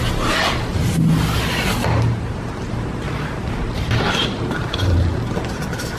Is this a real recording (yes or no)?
yes